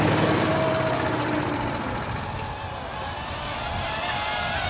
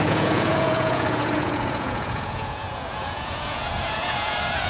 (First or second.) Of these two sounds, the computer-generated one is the second